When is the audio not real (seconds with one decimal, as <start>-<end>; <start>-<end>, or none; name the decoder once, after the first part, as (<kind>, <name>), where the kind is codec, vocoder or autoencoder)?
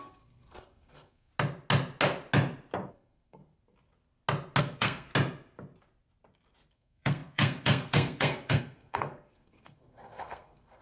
0.0-1.3 (codec, SNAC); 2.9-3.4; 4.6-5.1; 6.7-10.8